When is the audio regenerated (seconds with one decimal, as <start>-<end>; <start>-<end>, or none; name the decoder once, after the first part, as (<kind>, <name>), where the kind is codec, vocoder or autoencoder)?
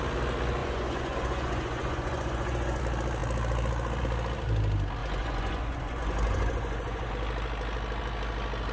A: 0.6-2.8 (vocoder, Vocos); 5.0-7.1